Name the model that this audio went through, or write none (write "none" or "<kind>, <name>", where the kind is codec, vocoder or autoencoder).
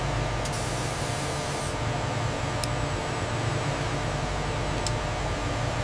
none